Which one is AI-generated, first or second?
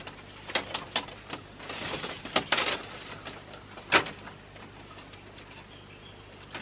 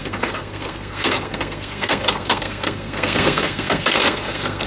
second